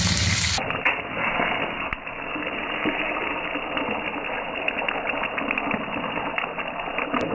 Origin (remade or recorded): recorded